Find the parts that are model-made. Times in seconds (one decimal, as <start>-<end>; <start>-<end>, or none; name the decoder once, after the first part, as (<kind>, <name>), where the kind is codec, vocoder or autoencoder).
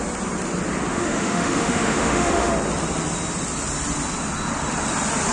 0.9-2.5 (autoencoder, DAC-VAE)